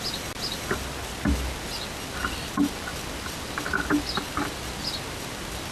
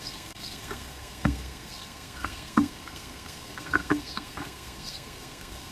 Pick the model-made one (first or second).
second